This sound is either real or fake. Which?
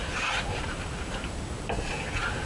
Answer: real